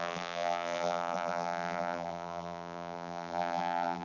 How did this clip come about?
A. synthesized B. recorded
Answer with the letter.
A